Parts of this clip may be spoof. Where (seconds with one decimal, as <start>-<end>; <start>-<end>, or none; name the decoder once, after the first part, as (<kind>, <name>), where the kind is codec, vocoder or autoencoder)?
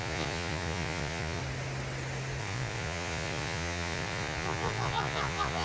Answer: 0.0-1.4 (vocoder, Vocos); 2.4-5.6